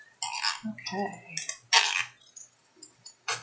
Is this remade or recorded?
recorded